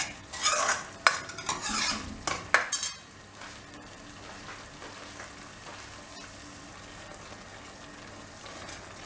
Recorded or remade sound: recorded